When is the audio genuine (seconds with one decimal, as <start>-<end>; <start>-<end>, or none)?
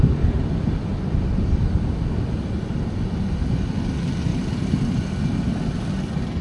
0.0-0.9; 1.5-4.3; 4.9-6.4